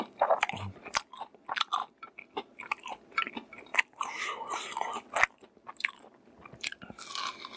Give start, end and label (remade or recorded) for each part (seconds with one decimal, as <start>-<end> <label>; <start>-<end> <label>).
0.0-7.6 recorded